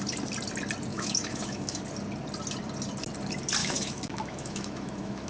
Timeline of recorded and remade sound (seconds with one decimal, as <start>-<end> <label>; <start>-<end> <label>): 0.0-0.9 recorded; 0.9-1.8 remade; 1.8-3.6 recorded; 3.6-5.3 remade